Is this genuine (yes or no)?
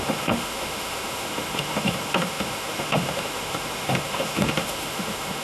no